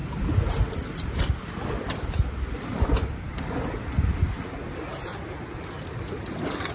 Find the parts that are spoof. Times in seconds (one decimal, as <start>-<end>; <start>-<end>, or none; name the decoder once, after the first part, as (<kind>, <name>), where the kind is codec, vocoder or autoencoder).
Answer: none